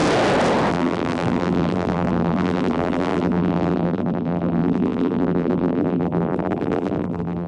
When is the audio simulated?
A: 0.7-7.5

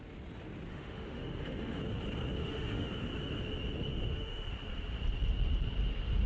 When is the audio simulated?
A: 0.7-1.8; 2.4-2.9; 3.9-4.5

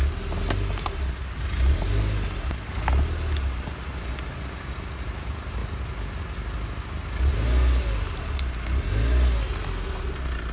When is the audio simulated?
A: none

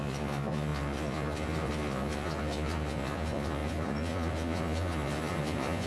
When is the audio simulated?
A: 0.0-5.9

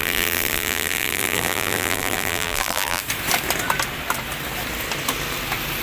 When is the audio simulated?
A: 0.0-3.0

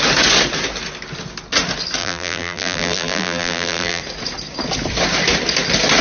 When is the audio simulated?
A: 2.0-4.0

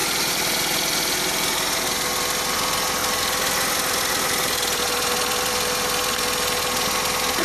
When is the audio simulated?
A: none

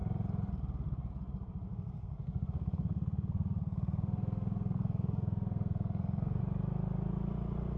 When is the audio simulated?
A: 1.7-6.4